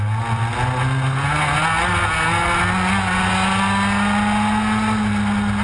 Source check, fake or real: real